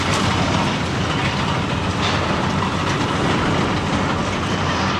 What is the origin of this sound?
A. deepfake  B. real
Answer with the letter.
B